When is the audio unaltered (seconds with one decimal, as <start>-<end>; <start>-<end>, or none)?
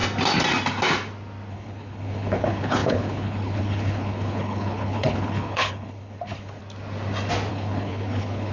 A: 0.0-1.5; 6.6-7.5